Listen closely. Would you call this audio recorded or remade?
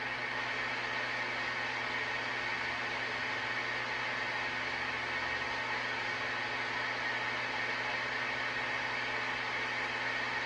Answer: recorded